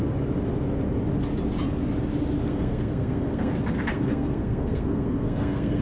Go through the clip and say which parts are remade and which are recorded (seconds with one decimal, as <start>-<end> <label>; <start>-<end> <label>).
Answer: 0.0-2.5 recorded; 2.5-3.5 remade; 3.5-3.9 recorded; 3.9-5.8 remade